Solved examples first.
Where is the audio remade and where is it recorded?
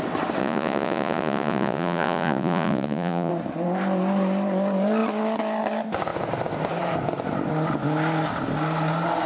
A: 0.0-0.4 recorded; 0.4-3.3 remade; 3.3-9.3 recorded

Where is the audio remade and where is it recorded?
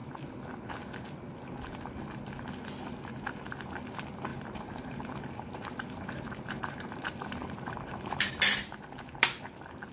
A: 0.0-4.3 recorded; 4.3-8.3 remade; 8.3-9.9 recorded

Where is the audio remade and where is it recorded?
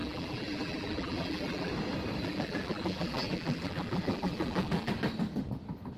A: 0.0-1.7 remade; 1.7-2.2 recorded; 2.2-4.9 remade; 4.9-6.0 recorded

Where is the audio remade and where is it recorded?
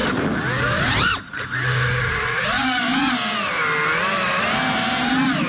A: 0.0-5.5 recorded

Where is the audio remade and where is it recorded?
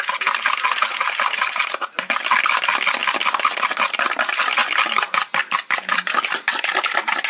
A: 0.0-7.3 recorded